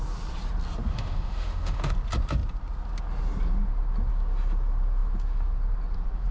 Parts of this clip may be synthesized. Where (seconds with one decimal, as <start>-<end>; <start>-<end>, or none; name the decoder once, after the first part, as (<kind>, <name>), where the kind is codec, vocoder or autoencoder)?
0.9-1.9 (autoencoder, DAC-VAE)